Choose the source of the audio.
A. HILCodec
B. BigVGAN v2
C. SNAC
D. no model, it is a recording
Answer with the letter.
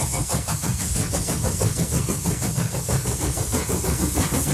C